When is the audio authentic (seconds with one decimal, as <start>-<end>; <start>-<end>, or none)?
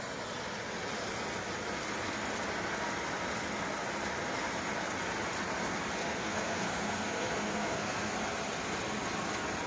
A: 0.0-6.0; 8.1-9.7